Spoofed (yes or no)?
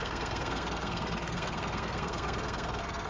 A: yes